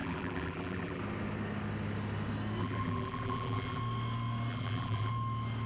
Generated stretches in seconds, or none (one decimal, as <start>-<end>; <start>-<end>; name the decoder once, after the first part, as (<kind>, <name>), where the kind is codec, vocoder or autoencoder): 0.0-1.0 (vocoder, BigVGAN v2); 2.6-3.8; 4.5-5.1